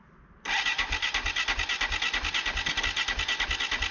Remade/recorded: recorded